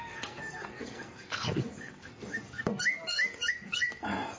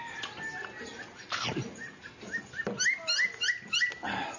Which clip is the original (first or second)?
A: second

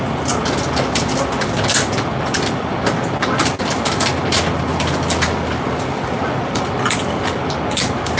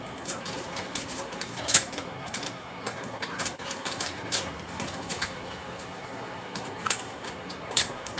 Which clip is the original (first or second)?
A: first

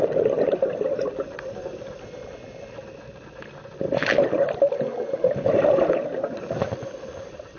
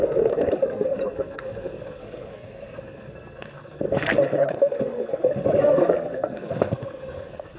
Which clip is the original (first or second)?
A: first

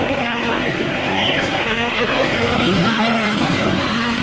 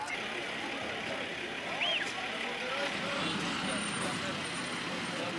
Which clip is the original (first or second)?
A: second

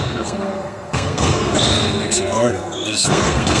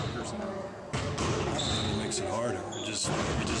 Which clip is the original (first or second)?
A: second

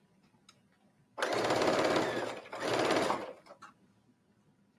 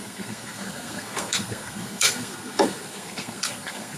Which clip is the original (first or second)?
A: first